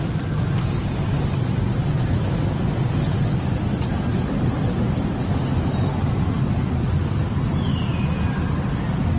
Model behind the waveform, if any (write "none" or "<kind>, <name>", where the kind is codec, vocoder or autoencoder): none